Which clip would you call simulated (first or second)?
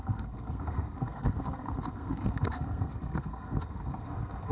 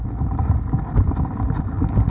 first